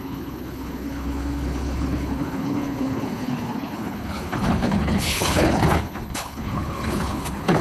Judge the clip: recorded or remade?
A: remade